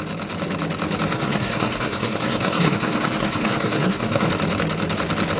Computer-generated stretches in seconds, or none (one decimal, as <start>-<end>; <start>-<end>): 1.1-4.3